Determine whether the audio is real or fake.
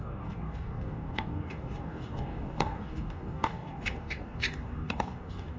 fake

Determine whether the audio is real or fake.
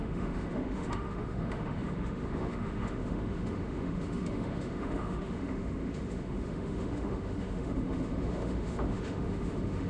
fake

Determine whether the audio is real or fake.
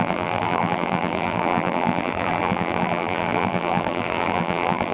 fake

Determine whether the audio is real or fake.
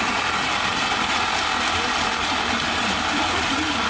fake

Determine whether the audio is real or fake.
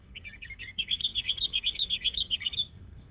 fake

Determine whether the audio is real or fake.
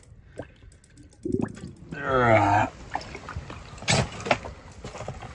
real